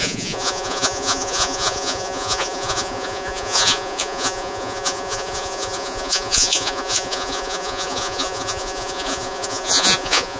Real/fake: fake